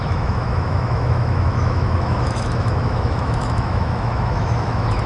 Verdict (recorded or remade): remade